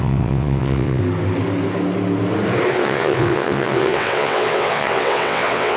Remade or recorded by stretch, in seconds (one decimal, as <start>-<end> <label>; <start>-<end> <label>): 0.0-1.0 remade; 1.0-2.7 recorded; 2.7-5.8 remade